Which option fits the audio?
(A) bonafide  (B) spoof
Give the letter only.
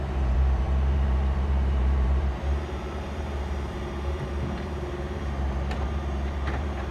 B